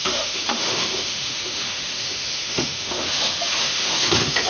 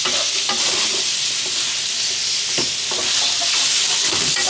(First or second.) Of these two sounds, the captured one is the second